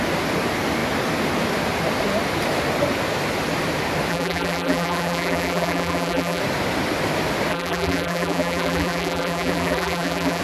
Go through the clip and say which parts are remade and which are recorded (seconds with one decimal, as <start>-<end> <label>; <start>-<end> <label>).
0.0-4.1 recorded; 4.1-6.4 remade; 6.4-7.5 recorded; 7.5-10.4 remade